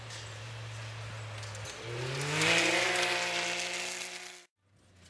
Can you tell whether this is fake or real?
real